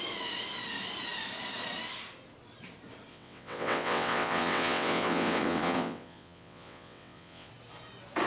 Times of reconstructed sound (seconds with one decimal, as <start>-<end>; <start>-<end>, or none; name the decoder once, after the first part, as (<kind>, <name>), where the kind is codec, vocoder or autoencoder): 3.1-7.5 (vocoder, WaveNeXt)